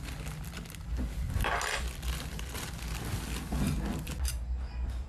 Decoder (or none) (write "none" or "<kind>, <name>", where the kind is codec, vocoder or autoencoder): none